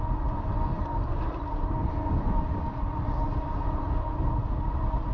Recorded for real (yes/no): yes